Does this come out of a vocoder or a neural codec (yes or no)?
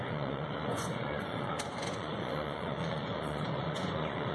yes